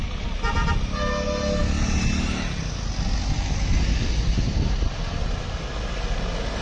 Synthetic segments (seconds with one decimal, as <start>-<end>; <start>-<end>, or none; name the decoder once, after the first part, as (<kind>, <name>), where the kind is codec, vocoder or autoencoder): none